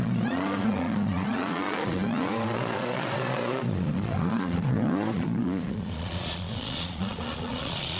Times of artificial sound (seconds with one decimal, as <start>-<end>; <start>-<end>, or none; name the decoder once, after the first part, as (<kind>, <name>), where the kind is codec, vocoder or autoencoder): 0.0-8.0 (vocoder, Vocos)